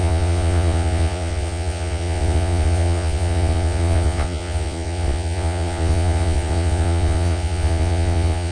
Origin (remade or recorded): remade